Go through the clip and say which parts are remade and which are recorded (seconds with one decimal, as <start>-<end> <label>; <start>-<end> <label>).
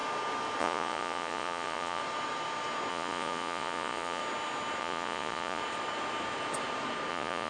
0.0-0.6 recorded; 0.6-2.0 remade; 2.0-2.9 recorded; 2.9-4.2 remade; 4.2-4.8 recorded; 4.8-5.6 remade; 5.6-7.1 recorded; 7.1-7.5 remade